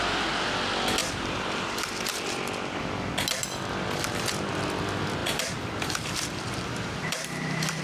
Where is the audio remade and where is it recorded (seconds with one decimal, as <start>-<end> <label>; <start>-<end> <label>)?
0.0-1.0 recorded; 1.0-2.4 remade; 2.4-5.2 recorded; 5.2-7.8 remade